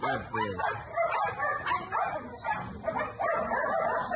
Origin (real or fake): real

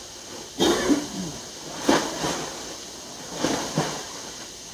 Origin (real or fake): real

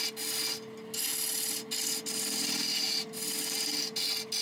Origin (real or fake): real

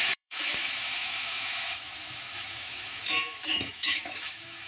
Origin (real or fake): fake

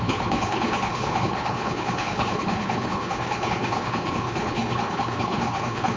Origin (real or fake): fake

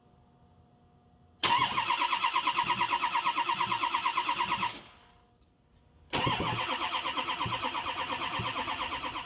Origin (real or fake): real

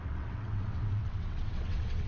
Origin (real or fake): fake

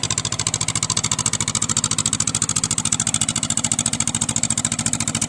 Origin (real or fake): real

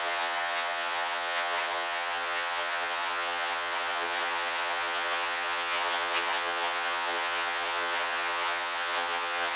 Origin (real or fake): fake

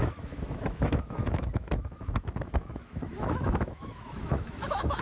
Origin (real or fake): fake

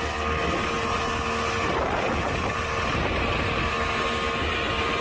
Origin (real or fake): real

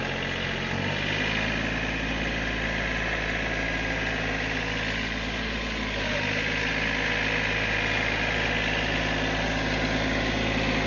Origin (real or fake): real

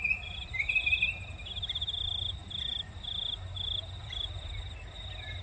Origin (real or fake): real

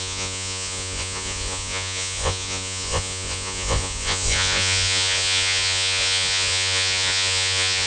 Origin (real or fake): fake